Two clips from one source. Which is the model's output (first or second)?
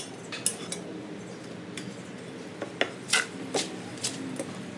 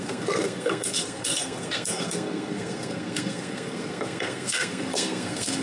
second